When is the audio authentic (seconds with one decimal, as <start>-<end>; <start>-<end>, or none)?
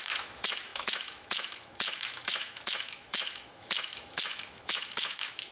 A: none